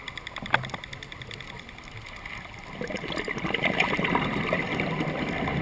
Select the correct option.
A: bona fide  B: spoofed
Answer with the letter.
A